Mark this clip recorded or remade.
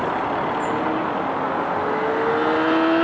recorded